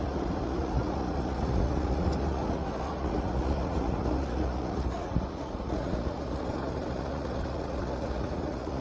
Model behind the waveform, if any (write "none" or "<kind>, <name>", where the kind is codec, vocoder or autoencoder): vocoder, Vocos